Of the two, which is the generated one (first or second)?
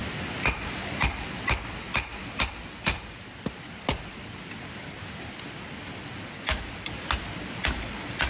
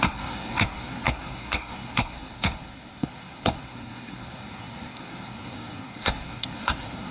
second